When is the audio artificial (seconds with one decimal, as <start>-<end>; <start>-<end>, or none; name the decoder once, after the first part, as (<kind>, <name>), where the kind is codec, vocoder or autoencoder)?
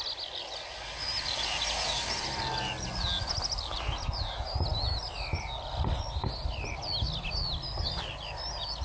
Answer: none